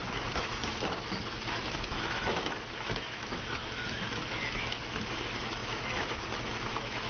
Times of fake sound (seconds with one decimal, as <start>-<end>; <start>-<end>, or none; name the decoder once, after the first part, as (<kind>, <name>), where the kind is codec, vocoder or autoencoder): 0.0-7.1 (autoencoder, DAC-VAE)